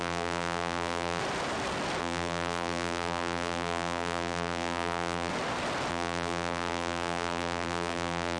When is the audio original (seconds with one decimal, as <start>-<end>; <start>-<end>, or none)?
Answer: 1.2-2.0; 5.3-5.9